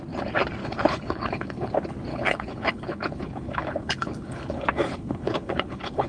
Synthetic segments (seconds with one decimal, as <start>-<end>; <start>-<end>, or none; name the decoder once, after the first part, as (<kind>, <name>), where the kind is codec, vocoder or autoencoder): 0.6-1.7 (codec, HILCodec); 2.1-6.1

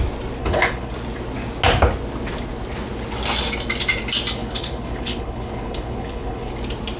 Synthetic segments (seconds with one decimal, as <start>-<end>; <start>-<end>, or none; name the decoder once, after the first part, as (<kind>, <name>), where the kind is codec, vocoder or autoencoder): 0.4-0.9 (codec, HILCodec); 4.4-6.5

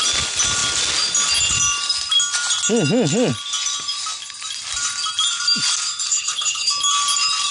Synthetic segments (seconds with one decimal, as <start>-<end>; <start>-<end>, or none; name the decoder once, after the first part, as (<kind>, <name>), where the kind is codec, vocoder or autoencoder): 6.1-6.7 (codec, HILCodec)

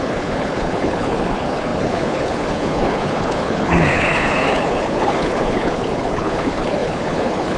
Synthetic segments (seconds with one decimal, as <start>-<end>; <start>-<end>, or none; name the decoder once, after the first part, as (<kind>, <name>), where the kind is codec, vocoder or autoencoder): 0.0-7.6 (codec, HILCodec)

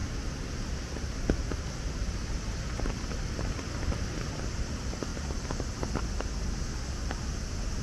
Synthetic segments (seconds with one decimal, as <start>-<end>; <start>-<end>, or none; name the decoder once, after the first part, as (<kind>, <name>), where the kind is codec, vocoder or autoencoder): none